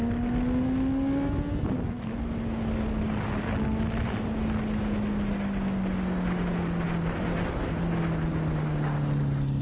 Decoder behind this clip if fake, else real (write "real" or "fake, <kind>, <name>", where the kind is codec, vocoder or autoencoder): real